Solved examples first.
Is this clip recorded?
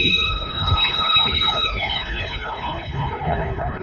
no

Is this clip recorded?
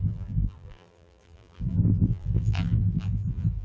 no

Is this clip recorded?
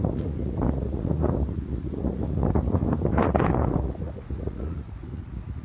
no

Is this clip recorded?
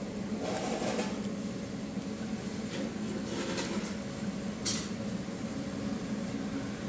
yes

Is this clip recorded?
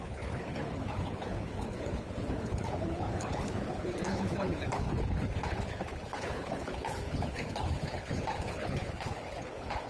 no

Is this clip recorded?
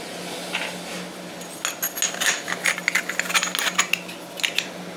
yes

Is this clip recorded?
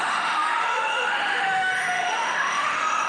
no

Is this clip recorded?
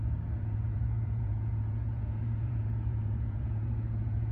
no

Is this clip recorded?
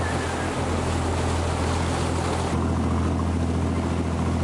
yes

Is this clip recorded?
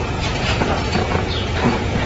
no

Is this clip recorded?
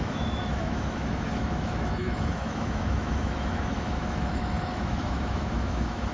no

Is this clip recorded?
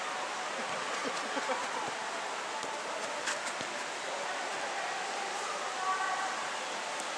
yes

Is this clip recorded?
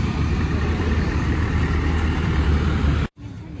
yes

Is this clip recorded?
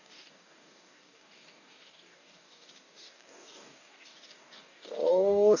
no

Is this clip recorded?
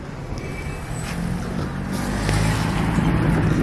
yes